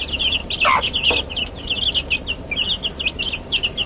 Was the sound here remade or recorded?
recorded